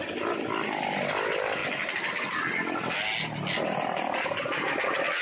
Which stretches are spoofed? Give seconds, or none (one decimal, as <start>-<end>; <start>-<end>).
none